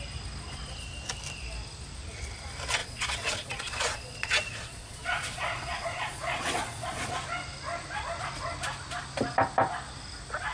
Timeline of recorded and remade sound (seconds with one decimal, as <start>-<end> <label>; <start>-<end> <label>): 0.0-2.8 recorded; 2.8-7.1 remade; 7.1-10.5 recorded